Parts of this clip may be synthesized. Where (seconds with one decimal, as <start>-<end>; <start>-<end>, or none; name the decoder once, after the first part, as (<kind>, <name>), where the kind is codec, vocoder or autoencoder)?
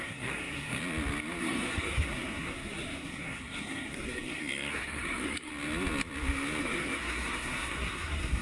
0.0-0.8 (codec, SNAC); 1.4-5.5; 6.6-8.4